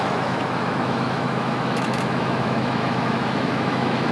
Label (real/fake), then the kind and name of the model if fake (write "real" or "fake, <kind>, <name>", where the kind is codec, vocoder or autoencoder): fake, autoencoder, DAC-VAE